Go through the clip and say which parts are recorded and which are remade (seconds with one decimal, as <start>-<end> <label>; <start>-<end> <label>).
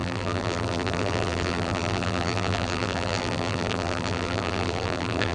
0.0-5.3 remade